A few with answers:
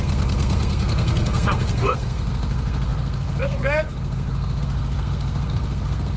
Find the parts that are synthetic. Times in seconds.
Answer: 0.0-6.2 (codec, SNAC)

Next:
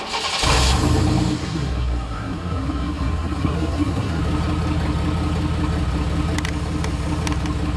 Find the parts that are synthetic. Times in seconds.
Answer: 1.4-4.2 (codec, SNAC)

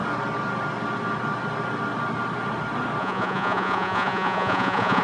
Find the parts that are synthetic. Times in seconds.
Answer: 3.0-5.0 (vocoder, Vocos)

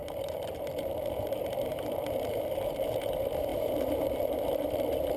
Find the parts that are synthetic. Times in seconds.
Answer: 0.0-3.1 (vocoder, BigVGAN v2); 3.5-4.3